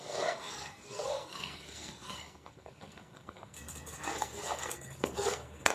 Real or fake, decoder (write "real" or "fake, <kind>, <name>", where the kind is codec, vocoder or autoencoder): fake, codec, SNAC